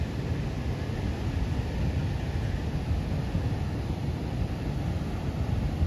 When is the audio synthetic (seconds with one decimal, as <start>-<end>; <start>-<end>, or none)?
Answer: none